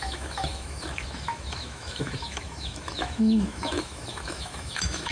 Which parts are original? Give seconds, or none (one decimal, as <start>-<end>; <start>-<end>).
none